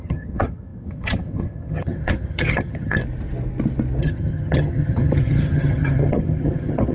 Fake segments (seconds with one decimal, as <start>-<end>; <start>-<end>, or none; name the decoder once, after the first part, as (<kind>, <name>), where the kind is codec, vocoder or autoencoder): 0.0-3.0 (vocoder, HiFi-GAN); 4.0-6.9